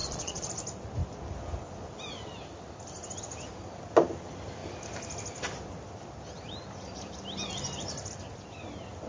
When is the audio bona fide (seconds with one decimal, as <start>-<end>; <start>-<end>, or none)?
0.5-9.1